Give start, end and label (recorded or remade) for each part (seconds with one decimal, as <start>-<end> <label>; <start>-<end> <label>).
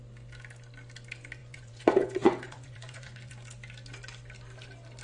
0.0-1.4 recorded; 1.4-3.3 remade; 3.3-5.0 recorded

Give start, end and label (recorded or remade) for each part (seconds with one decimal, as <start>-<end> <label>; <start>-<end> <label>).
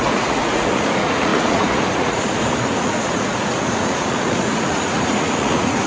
0.0-5.9 remade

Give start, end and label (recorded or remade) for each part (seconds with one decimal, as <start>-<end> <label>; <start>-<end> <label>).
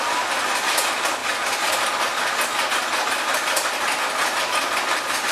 0.0-5.3 recorded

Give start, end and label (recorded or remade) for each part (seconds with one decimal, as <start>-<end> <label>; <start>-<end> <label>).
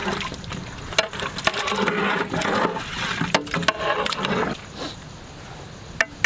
0.0-6.3 recorded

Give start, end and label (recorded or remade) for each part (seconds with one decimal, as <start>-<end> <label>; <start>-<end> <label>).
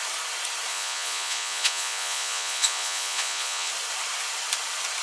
0.0-0.7 recorded; 0.7-3.7 remade; 3.7-5.0 recorded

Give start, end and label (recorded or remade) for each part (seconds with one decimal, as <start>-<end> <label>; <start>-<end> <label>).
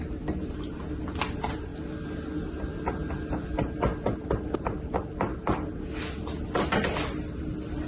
0.0-7.9 recorded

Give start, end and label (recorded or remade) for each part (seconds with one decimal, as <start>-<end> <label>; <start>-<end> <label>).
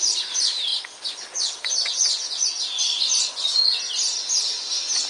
0.0-0.7 recorded; 0.7-3.7 remade; 3.7-5.1 recorded